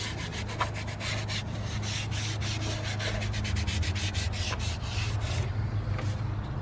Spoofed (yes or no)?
no